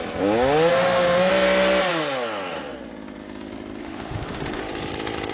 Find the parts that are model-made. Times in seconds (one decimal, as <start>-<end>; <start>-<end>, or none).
0.7-1.3; 3.8-4.6